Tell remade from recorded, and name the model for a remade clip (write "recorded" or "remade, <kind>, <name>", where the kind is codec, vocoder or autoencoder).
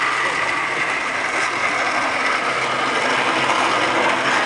recorded